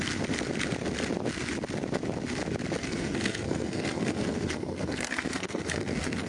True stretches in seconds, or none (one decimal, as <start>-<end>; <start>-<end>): 0.0-2.8